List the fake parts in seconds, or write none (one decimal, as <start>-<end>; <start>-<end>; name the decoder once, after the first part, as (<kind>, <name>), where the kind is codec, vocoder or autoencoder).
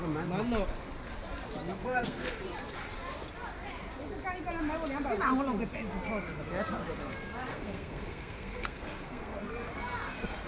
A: 1.8-2.4 (codec, SNAC); 7.5-9.4